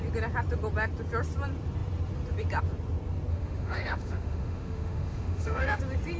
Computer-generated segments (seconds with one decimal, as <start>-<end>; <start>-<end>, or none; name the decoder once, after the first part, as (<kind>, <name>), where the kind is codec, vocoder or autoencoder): 3.3-5.8 (autoencoder, DAC-VAE)

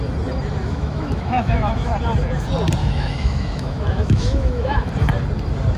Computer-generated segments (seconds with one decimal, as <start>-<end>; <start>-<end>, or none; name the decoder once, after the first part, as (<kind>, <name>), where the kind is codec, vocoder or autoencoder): 0.6-1.9 (autoencoder, DAC-VAE); 2.8-4.9

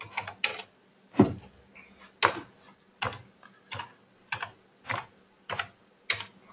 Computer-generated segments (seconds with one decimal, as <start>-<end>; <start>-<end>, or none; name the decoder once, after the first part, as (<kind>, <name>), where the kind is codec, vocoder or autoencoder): none

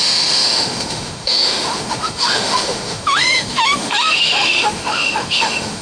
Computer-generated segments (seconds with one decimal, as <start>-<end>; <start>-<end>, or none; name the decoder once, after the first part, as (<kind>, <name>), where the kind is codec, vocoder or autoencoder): 0.0-5.8 (autoencoder, DAC-VAE)

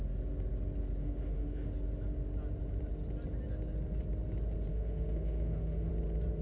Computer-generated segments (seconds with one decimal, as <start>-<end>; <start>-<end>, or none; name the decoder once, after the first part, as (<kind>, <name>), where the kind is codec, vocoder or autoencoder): 1.0-1.7 (autoencoder, DAC-VAE); 4.7-5.9

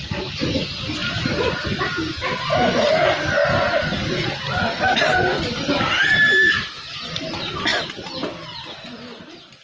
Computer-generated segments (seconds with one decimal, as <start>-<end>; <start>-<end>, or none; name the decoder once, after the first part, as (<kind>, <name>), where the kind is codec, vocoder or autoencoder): none

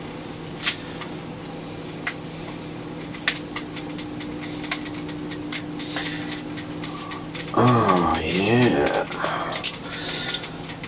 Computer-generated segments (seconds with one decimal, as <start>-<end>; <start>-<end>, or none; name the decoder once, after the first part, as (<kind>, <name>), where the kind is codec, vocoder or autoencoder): 8.1-9.4 (autoencoder, DAC-VAE)

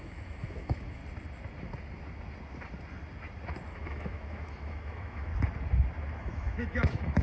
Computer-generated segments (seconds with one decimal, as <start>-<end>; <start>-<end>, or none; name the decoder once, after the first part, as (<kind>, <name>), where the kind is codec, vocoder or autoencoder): 0.0-1.0 (autoencoder, DAC-VAE); 3.7-5.3; 6.2-7.2